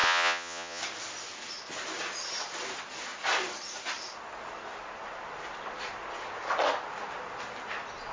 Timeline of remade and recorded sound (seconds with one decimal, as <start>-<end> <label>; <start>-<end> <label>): 0.0-0.8 remade; 0.8-8.1 recorded